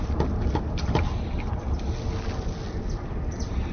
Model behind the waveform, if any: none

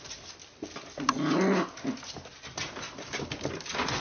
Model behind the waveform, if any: none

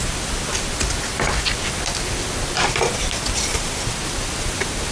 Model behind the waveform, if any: none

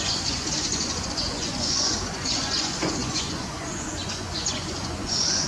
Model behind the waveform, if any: vocoder, Vocos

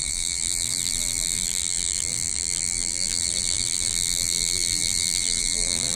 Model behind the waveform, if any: vocoder, BigVGAN v2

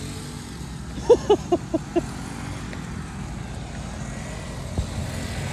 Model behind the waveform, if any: none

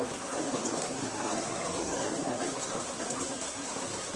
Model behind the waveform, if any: codec, SNAC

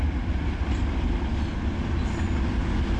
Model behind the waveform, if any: none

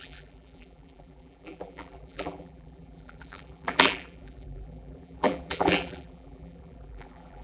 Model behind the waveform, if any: vocoder, BigVGAN v2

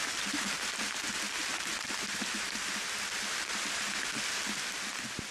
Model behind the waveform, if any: none